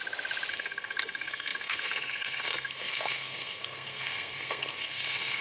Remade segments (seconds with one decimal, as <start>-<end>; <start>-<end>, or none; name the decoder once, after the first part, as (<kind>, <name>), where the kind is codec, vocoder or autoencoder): 0.5-5.4 (codec, SNAC)